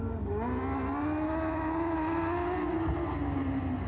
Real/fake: real